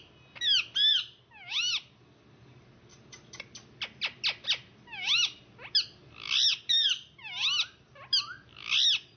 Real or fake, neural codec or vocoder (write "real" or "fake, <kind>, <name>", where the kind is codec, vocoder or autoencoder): real